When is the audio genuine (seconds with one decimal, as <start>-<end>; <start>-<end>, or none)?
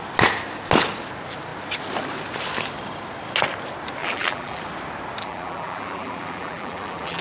0.0-4.0; 4.6-5.2